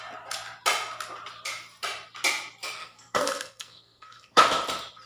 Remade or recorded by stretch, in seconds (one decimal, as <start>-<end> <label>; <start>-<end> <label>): 0.0-2.8 recorded; 2.8-4.4 remade; 4.4-5.1 recorded

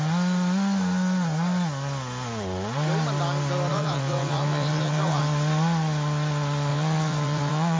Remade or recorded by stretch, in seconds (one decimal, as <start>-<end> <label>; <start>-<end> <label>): 0.0-3.7 recorded; 3.7-5.2 remade; 5.2-6.7 recorded; 6.7-7.8 remade

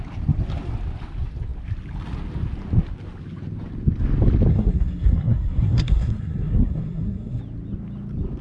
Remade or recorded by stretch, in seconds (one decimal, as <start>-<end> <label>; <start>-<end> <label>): 0.0-4.5 recorded; 4.5-7.4 remade; 7.4-8.4 recorded

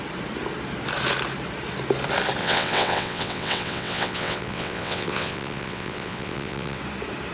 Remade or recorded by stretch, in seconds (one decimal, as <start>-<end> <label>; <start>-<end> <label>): 0.0-2.4 recorded; 2.4-6.8 remade; 6.8-7.3 recorded

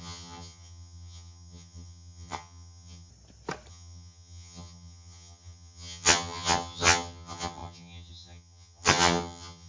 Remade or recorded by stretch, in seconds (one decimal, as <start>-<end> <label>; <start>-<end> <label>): 0.0-3.1 remade; 3.1-3.7 recorded; 3.7-9.7 remade

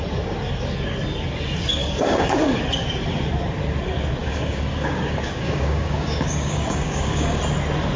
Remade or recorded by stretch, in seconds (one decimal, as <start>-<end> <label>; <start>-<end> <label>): 0.0-1.8 recorded; 1.8-2.6 remade; 2.6-4.2 recorded; 4.2-7.4 remade; 7.4-8.0 recorded

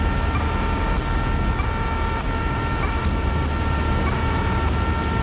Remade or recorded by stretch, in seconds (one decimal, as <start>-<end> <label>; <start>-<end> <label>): 0.0-5.2 recorded